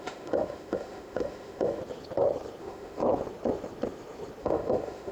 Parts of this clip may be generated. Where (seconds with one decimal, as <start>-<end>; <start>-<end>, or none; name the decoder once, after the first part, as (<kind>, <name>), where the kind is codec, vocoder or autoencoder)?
0.0-1.8 (autoencoder, DAC-VAE); 2.6-3.0; 4.4-5.1